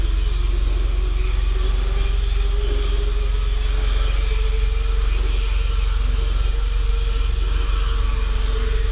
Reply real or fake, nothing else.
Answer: real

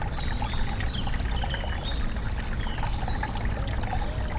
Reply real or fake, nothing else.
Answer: real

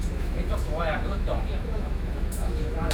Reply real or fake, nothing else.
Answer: fake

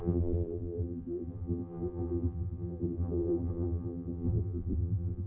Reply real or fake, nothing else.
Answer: fake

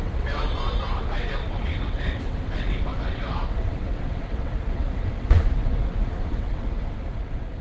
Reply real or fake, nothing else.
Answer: fake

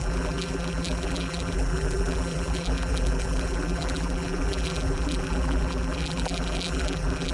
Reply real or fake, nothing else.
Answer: fake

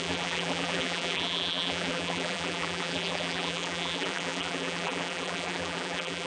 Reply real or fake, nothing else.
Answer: fake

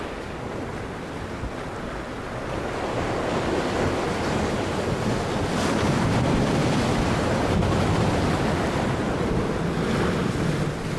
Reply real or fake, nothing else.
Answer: real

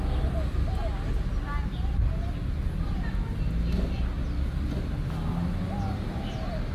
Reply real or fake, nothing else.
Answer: real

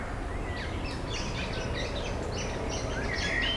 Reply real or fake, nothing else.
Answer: real